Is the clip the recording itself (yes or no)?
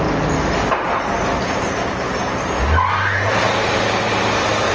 yes